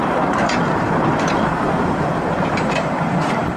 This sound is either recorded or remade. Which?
remade